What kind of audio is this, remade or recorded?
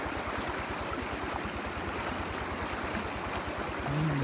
recorded